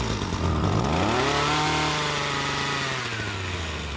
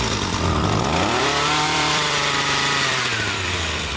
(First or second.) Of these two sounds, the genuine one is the first